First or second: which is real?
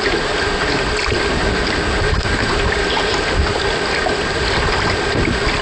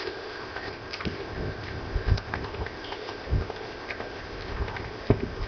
first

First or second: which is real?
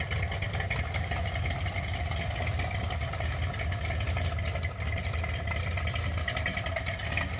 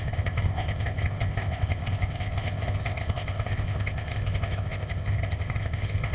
first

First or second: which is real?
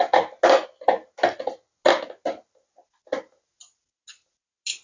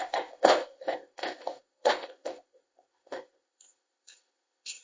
first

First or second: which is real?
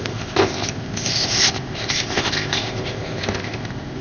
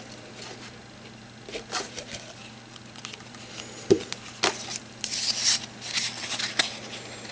second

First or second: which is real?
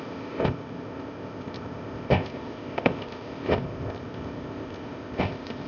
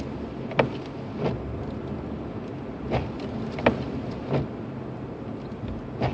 second